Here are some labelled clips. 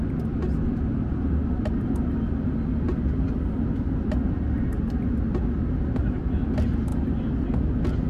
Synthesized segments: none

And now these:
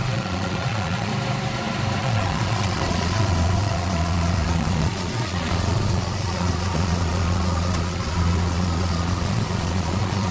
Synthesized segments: 0.0-1.1 (vocoder, Vocos); 2.0-10.3

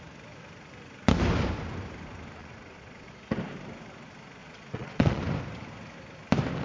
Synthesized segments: 2.4-3.1 (vocoder, Vocos); 4.4-5.2

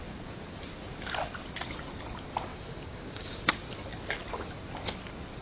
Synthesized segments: 2.5-3.5 (codec, DAC)